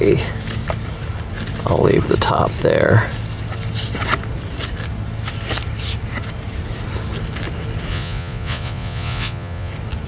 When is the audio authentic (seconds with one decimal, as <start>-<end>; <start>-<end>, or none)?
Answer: 0.0-7.9; 9.7-10.1